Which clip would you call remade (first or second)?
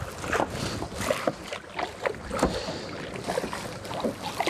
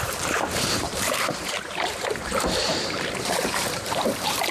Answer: second